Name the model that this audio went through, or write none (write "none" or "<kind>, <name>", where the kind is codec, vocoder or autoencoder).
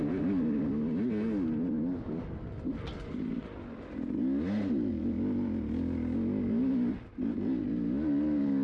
none